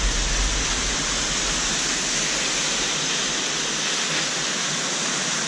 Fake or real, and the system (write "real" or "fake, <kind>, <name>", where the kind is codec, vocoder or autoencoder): real